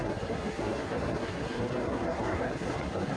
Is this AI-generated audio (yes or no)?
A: yes